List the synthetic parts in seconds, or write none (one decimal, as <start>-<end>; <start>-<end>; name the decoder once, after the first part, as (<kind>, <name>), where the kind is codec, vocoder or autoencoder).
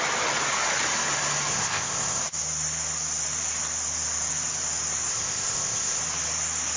1.5-2.2 (codec, ZipCodec); 5.1-6.0